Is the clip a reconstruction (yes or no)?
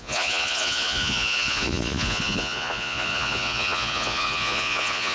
yes